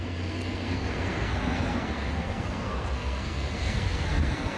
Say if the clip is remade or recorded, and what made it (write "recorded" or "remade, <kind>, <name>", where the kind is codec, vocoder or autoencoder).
remade, codec, SNAC